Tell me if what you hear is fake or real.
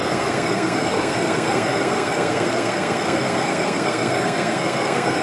fake